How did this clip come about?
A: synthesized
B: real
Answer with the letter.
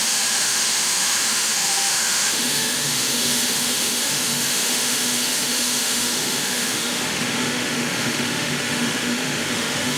A